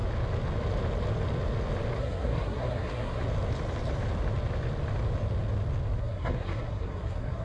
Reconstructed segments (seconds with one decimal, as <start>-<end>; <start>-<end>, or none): 2.0-3.2; 6.0-7.4